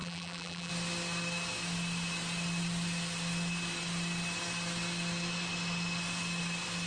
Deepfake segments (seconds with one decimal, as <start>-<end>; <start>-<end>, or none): 0.0-0.7